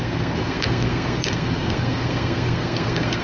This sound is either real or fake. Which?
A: fake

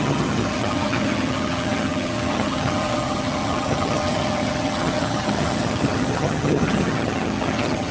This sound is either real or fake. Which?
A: fake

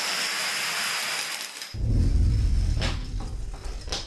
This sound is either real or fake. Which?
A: real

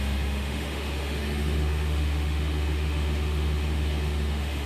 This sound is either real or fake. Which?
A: fake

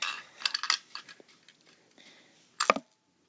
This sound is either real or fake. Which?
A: real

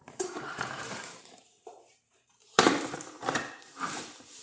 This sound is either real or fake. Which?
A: fake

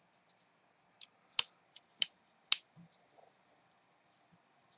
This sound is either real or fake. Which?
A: real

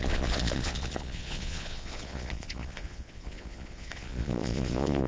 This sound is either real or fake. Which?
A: fake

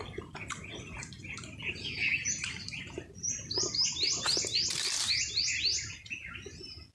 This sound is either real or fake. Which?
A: real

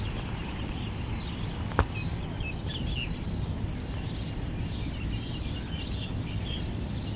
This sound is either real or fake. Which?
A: real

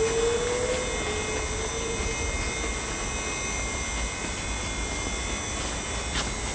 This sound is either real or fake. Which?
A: real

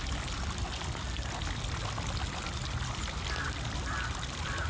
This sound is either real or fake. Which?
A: real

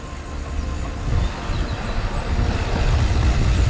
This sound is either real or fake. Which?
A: real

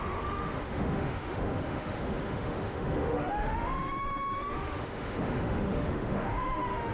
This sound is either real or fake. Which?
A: fake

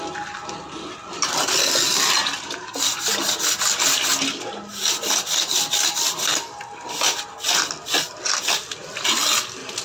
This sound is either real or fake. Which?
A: real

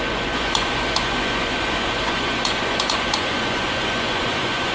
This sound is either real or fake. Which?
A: fake